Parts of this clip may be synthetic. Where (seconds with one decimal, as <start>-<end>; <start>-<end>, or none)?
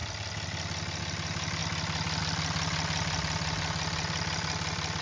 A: none